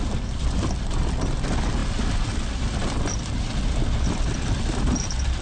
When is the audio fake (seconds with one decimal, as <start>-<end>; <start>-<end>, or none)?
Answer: none